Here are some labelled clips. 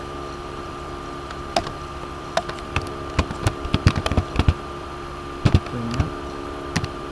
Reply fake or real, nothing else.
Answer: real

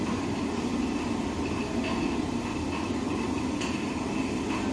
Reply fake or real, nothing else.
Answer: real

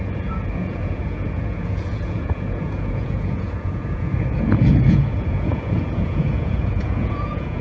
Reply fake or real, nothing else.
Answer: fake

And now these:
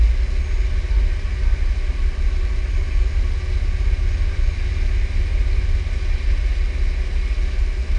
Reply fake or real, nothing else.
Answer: real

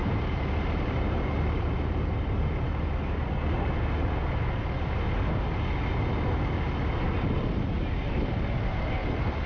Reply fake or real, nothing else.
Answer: real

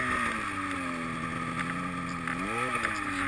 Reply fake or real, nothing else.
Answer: real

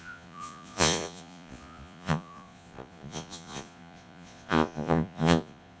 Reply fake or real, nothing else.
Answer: fake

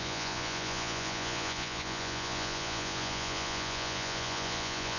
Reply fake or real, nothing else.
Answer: fake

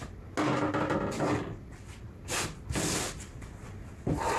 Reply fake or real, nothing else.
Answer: real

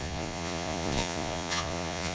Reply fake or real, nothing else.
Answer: fake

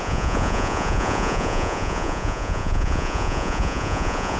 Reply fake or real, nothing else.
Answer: fake